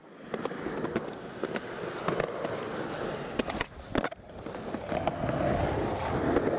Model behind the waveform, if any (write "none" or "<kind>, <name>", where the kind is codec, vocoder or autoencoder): none